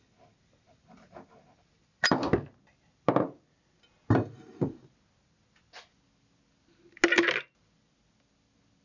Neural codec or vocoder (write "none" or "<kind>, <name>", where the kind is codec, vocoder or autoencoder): none